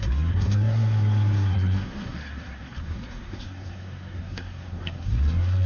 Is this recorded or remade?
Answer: remade